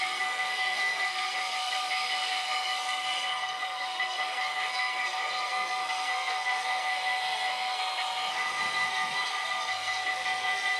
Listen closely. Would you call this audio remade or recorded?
remade